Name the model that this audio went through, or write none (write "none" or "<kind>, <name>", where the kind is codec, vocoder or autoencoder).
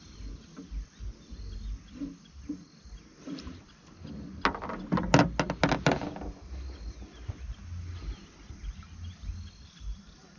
none